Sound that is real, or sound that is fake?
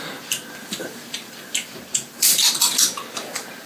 fake